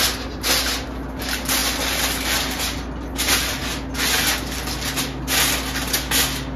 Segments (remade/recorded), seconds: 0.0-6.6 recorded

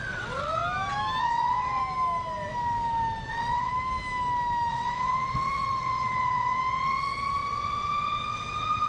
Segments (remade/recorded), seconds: 0.0-0.6 remade; 0.6-1.2 recorded; 1.2-1.8 remade; 1.8-3.3 recorded; 3.3-3.7 remade; 3.7-4.7 recorded; 4.7-8.9 remade

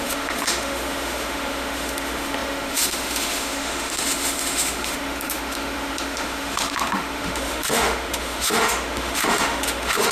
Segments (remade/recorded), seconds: 0.0-10.1 remade

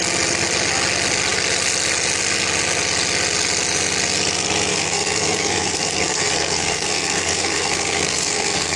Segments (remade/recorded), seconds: 0.0-4.7 recorded; 4.7-8.8 remade

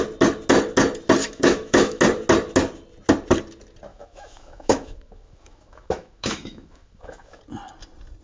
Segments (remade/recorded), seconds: 0.0-1.2 recorded; 1.2-2.0 remade; 2.0-3.9 recorded; 3.9-7.4 remade; 7.4-8.2 recorded

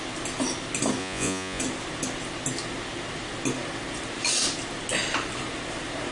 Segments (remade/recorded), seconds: 0.0-1.0 recorded; 1.0-1.6 remade; 1.6-6.1 recorded

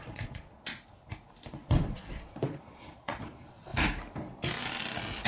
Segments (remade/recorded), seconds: 0.0-0.7 remade; 0.7-1.5 recorded; 1.5-3.7 remade; 3.7-5.3 recorded

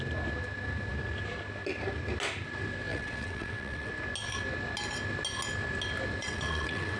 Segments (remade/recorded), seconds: 0.0-2.9 recorded; 2.9-3.9 remade; 3.9-6.2 recorded; 6.2-7.0 remade